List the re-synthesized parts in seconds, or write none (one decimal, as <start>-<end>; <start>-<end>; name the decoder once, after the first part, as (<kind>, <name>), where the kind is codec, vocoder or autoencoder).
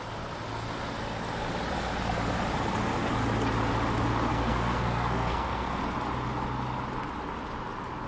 4.3-5.8 (codec, SNAC)